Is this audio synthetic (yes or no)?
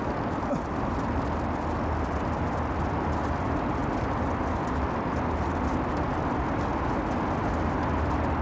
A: no